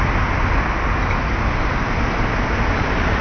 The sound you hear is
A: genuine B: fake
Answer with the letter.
A